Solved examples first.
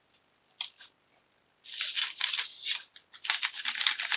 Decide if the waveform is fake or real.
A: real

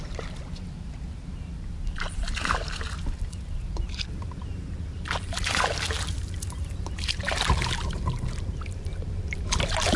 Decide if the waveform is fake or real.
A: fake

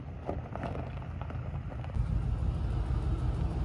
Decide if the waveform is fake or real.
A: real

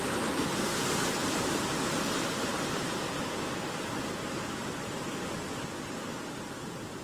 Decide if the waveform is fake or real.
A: real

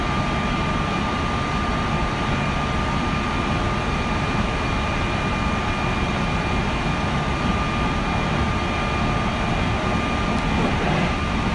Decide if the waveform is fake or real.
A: real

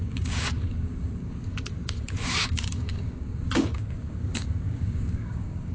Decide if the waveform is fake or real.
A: fake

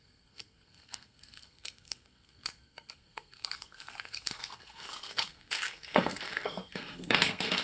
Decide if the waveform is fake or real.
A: fake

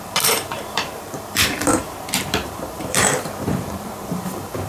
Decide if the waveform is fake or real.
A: fake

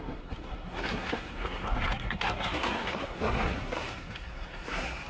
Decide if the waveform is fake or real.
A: fake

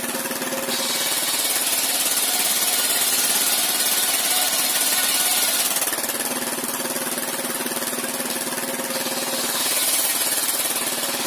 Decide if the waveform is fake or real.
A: real